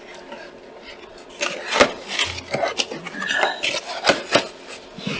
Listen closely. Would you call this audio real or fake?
real